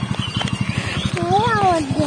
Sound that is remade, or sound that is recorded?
recorded